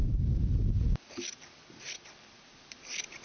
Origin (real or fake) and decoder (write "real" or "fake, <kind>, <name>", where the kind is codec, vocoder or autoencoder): real